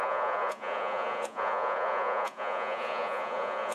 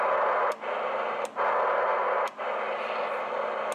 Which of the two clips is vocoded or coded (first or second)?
first